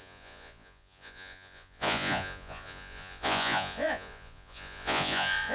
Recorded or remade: remade